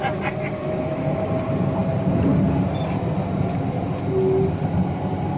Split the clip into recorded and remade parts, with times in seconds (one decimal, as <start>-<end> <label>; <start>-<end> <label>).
0.0-0.6 recorded; 0.6-1.3 remade; 1.3-5.4 recorded